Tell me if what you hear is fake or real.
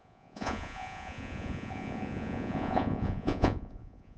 fake